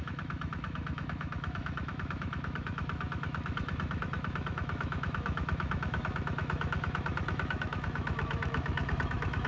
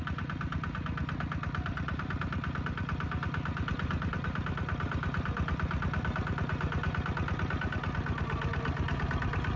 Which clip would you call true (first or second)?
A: second